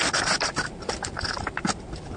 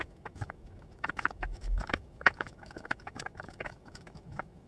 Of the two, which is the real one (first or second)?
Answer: first